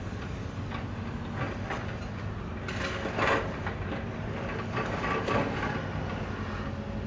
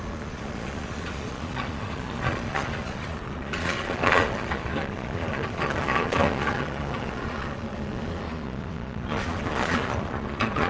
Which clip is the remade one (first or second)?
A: second